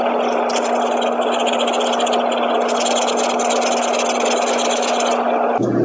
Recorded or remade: recorded